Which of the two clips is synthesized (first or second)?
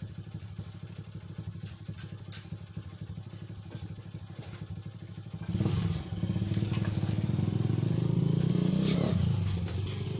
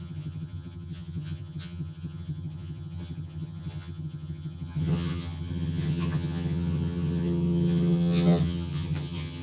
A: second